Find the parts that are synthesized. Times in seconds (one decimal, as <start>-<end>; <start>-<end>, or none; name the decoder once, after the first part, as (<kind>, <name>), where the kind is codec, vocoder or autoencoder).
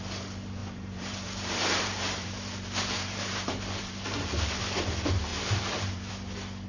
0.6-4.6 (vocoder, BigVGAN v2); 5.3-6.1